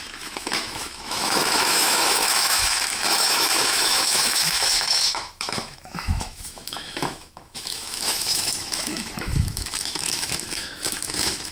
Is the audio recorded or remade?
remade